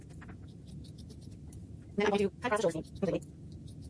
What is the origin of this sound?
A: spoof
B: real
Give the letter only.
B